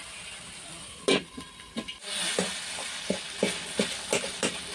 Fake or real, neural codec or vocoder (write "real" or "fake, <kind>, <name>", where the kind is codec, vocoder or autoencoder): real